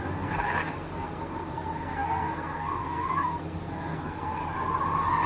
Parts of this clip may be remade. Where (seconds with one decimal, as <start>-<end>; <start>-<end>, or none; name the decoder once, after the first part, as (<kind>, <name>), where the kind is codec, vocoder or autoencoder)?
0.0-4.4 (codec, SNAC)